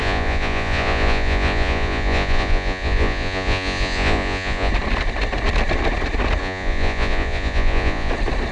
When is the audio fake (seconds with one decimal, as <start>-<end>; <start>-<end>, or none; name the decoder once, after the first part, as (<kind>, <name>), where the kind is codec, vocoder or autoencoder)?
0.0-4.7 (vocoder, Vocos); 6.4-8.1